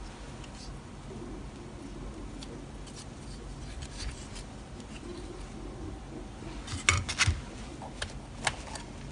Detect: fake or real real